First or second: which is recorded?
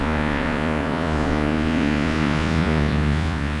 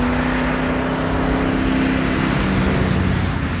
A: second